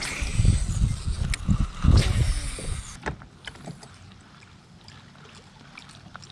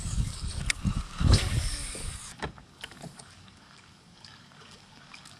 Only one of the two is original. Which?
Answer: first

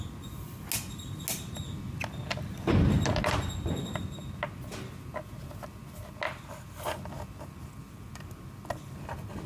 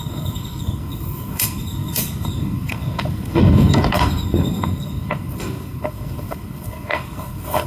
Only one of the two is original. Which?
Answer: first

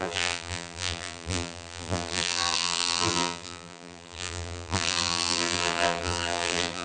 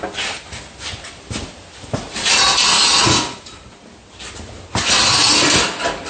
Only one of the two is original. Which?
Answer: second